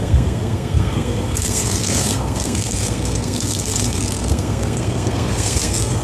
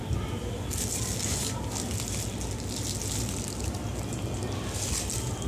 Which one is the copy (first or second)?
first